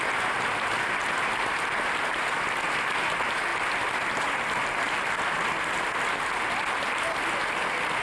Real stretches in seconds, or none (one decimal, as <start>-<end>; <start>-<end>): 0.0-3.5; 5.3-8.0